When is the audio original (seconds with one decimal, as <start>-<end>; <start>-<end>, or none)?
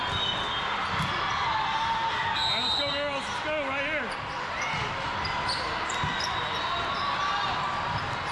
0.0-8.3